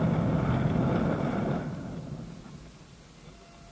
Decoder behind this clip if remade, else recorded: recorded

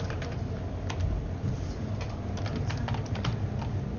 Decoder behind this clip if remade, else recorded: recorded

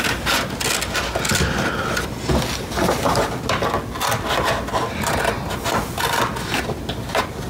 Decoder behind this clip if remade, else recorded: recorded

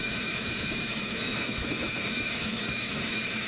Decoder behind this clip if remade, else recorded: remade, autoencoder, DAC-VAE